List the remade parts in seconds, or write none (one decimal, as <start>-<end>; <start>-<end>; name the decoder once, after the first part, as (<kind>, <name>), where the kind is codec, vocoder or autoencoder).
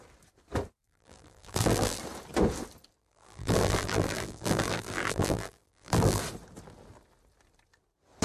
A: 0.8-2.0 (vocoder, BigVGAN v2); 3.0-6.2